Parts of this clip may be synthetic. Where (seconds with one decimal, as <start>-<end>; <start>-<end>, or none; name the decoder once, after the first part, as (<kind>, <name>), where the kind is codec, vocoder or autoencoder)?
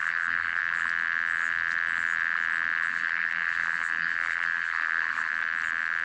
0.0-0.6 (codec, SNAC); 2.9-5.3